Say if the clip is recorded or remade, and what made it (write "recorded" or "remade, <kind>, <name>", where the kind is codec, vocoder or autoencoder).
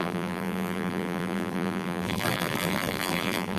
remade, vocoder, BigVGAN v2